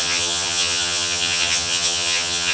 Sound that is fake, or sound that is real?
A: fake